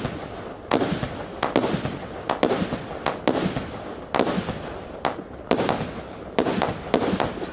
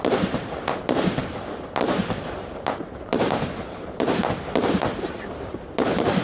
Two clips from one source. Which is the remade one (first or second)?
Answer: second